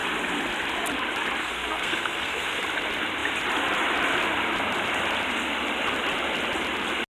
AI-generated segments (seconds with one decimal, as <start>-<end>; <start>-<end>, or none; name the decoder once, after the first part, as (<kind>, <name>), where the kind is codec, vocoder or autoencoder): 1.4-2.6 (codec, SNAC)